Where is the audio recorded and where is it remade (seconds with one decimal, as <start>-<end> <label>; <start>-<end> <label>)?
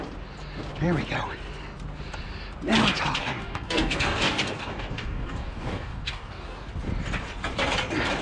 0.0-3.2 recorded; 3.2-6.7 remade; 6.7-8.2 recorded